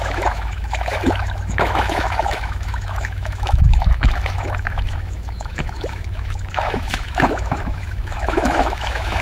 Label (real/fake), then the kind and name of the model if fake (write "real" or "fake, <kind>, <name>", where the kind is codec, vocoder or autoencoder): fake, autoencoder, DAC-VAE